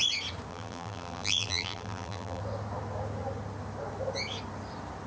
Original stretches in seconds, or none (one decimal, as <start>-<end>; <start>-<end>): 0.0-0.5; 2.4-5.1